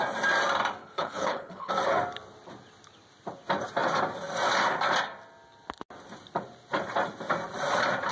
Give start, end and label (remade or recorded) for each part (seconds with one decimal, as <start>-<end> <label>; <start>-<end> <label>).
0.0-0.8 recorded; 0.8-1.7 remade; 1.7-8.1 recorded